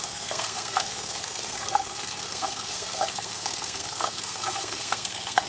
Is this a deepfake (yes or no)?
yes